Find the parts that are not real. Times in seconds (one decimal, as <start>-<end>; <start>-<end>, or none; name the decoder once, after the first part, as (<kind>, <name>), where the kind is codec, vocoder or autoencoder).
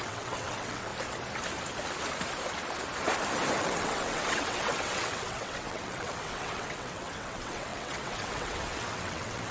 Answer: 0.0-0.9 (vocoder, WaveNeXt); 3.6-9.5